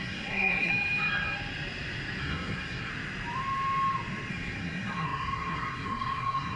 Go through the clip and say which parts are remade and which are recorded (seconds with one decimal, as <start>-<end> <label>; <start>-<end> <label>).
0.0-0.7 remade; 0.7-2.2 recorded; 2.2-2.9 remade; 2.9-4.3 recorded; 4.3-6.6 remade